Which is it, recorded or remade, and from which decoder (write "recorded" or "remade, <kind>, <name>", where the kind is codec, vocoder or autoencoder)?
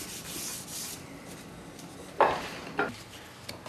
recorded